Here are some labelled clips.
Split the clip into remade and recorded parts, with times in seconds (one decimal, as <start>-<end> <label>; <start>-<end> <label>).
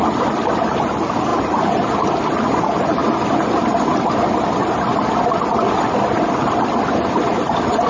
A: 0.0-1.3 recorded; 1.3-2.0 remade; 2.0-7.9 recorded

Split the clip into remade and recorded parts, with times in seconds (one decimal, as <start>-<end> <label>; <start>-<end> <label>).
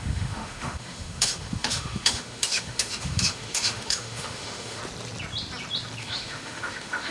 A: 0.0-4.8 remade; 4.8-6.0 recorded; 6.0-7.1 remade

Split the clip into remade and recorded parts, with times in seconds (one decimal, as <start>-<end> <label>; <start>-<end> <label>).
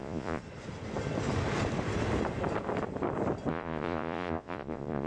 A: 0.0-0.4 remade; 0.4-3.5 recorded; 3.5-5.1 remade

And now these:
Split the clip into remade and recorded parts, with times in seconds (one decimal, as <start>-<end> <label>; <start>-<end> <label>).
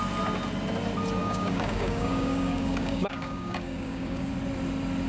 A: 0.0-1.2 recorded; 1.2-4.3 remade; 4.3-5.1 recorded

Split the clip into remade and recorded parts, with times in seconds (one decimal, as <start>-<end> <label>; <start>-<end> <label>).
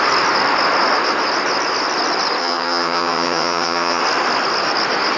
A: 0.0-2.4 recorded; 2.4-4.0 remade; 4.0-5.2 recorded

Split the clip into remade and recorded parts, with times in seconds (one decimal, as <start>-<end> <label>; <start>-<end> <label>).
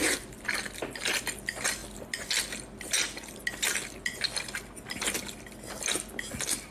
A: 0.0-6.7 recorded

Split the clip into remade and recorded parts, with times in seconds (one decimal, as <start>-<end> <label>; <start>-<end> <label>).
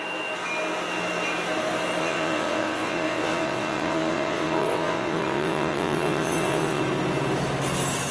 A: 0.0-2.0 recorded; 2.0-6.8 remade; 6.8-8.1 recorded